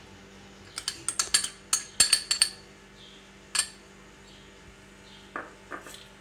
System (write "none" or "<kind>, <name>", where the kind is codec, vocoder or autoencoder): none